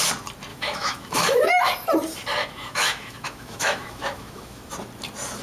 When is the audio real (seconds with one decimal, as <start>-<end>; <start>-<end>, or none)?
0.0-0.5; 1.6-2.4; 4.7-5.4